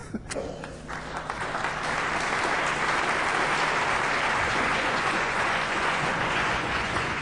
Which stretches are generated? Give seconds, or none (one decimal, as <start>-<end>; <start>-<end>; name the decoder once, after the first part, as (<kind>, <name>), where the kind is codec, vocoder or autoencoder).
4.3-7.2 (vocoder, Vocos)